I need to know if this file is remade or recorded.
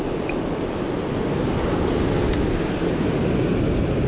recorded